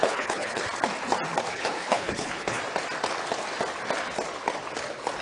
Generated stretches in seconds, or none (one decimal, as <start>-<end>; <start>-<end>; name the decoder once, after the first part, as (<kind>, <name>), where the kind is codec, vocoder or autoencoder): 0.0-0.6 (codec, HILCodec); 1.5-2.6